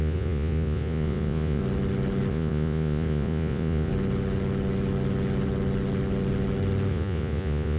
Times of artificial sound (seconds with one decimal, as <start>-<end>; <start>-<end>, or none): 0.0-1.6; 2.3-3.9; 6.9-7.8